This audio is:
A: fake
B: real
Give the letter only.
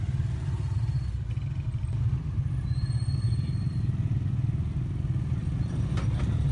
B